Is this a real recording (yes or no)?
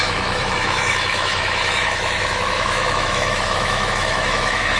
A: no